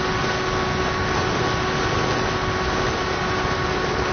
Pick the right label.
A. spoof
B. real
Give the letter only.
B